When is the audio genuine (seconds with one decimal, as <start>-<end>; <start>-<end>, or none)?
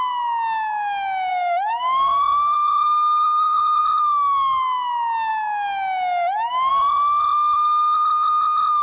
0.0-1.3; 3.8-8.8